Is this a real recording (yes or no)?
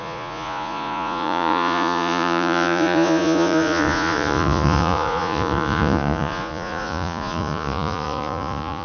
no